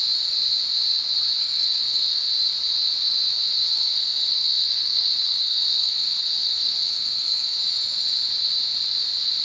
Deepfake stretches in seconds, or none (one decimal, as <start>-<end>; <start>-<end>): 1.4-2.3; 3.6-7.6